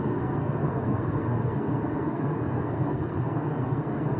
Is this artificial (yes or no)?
yes